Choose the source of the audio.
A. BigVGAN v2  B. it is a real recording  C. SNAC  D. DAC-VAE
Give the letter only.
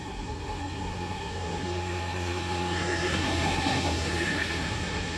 C